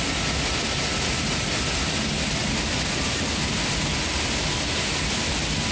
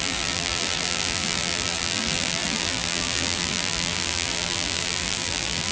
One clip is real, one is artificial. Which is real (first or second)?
first